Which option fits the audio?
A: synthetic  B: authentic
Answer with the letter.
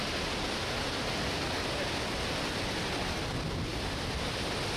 B